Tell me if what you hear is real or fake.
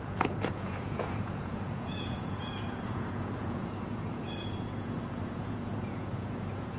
fake